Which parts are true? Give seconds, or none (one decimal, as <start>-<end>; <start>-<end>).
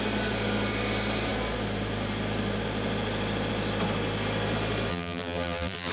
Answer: 0.0-4.9